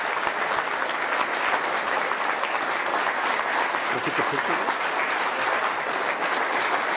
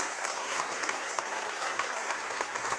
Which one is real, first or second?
first